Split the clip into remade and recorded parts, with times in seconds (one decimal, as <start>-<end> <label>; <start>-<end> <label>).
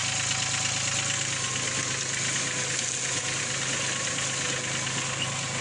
0.0-5.6 recorded